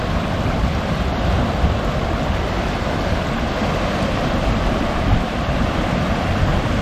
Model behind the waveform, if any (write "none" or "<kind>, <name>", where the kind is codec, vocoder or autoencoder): vocoder, BigVGAN v2